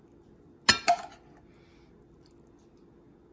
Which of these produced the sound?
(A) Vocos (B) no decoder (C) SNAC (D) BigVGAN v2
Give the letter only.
B